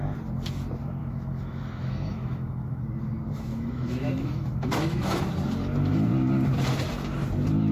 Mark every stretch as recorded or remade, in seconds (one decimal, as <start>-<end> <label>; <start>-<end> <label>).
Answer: 0.0-1.0 recorded; 1.0-2.8 remade; 2.8-3.5 recorded; 3.5-5.2 remade; 5.2-7.7 recorded